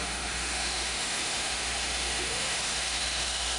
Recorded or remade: remade